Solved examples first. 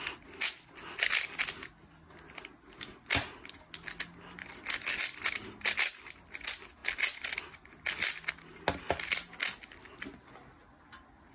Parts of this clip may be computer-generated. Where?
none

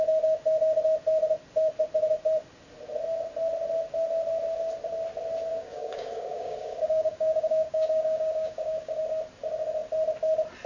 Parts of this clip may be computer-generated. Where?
5.5-9.0 (codec, DAC)

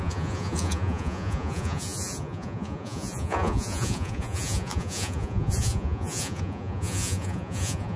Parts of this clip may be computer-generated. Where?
0.0-8.0 (vocoder, Vocos)

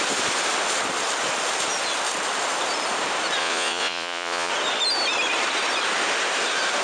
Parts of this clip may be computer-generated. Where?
3.4-4.5 (vocoder, Vocos)

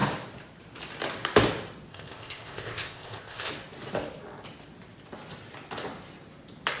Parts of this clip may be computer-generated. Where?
1.9-3.5 (codec, ZipCodec)

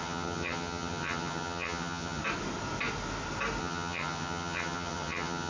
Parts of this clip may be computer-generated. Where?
0.0-2.2 (vocoder, HiFi-GAN); 3.6-5.5